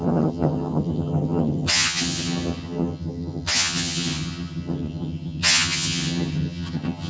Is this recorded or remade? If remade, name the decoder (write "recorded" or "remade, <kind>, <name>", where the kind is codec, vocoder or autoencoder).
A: remade, vocoder, HiFi-GAN